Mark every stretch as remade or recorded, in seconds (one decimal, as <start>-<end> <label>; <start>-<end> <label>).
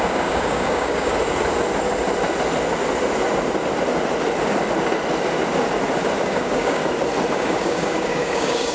0.0-1.1 remade; 1.1-6.2 recorded; 6.2-6.8 remade; 6.8-7.3 recorded; 7.3-8.7 remade